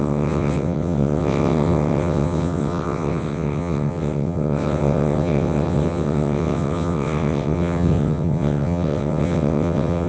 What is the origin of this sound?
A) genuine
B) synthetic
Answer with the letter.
B